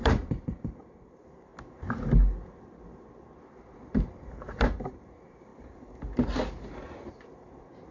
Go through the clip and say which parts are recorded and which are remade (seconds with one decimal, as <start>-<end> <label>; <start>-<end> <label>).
0.0-1.5 remade; 1.5-3.6 recorded; 3.6-5.5 remade; 5.5-7.1 recorded; 7.1-7.9 remade